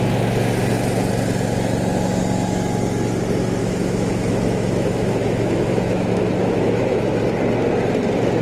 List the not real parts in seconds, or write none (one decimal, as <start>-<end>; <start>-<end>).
3.6-7.2